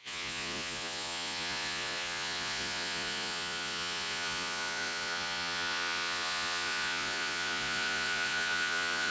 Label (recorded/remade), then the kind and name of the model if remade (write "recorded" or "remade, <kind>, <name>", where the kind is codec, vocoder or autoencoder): remade, vocoder, Vocos